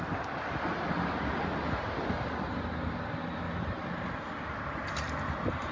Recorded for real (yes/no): yes